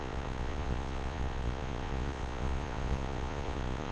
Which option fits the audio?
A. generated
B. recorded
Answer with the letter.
A